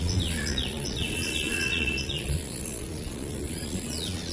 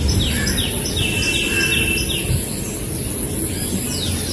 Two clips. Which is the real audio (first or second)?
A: second